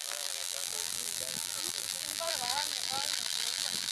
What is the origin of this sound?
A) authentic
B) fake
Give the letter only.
B